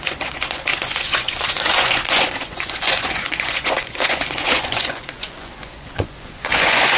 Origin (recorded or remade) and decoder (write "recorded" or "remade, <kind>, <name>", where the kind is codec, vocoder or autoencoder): remade, vocoder, Vocos